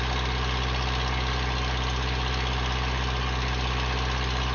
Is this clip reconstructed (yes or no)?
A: no